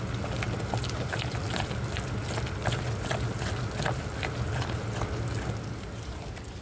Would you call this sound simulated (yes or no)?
no